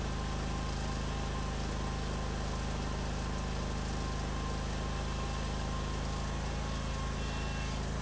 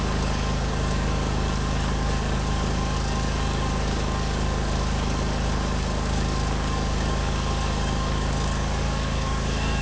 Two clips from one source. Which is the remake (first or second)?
second